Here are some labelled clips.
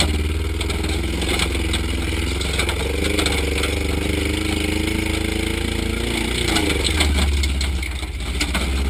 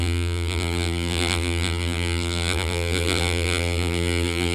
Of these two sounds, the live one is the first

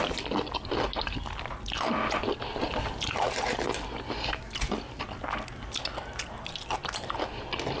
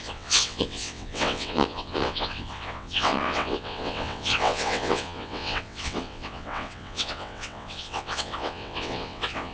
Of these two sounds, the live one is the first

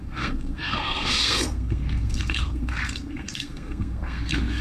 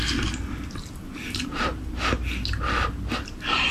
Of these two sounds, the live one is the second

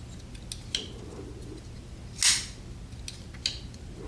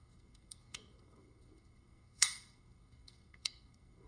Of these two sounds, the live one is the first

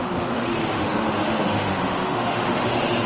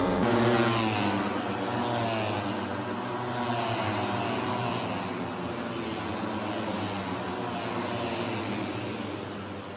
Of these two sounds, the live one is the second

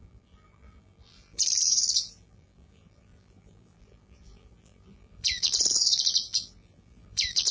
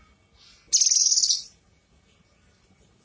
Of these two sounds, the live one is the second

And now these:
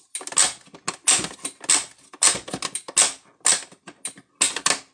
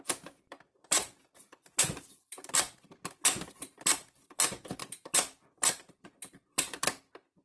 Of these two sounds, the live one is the first